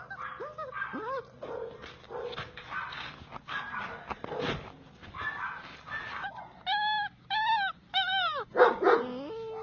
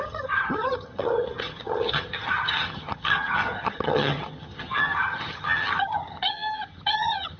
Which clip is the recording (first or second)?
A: first